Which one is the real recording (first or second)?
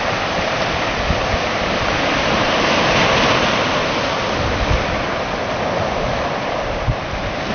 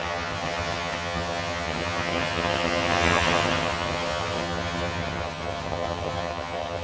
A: first